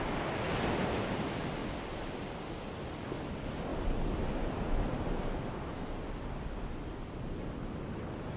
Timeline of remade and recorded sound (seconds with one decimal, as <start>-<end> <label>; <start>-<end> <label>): 0.0-8.4 recorded